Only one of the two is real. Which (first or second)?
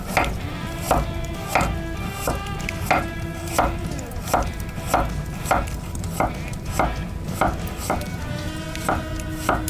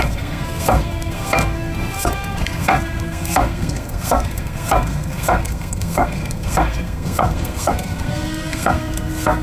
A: first